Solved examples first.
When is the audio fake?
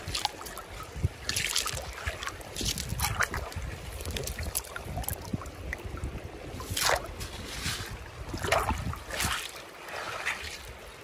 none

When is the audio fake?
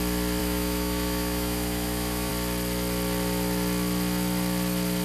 0.4-2.3 (autoencoder, DAC-VAE)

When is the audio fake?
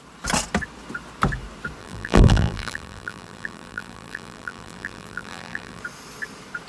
1.8-5.8 (vocoder, BigVGAN v2)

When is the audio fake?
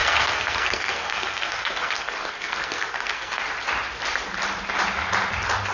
0.0-3.4 (codec, SNAC)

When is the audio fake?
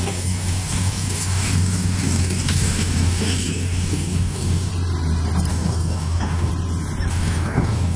0.0-4.7 (codec, DAC); 5.5-6.5; 7.1-8.0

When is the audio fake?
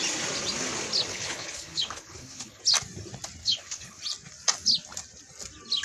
1.1-2.6 (codec, HILCodec); 3.4-4.0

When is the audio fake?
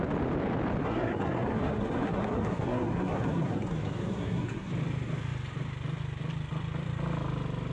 0.8-4.7 (codec, SNAC)